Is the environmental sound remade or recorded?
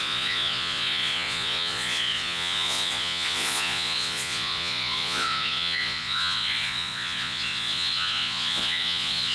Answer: remade